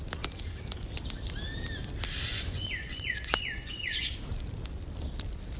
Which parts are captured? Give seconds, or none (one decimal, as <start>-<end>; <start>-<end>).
0.0-2.3; 4.1-5.6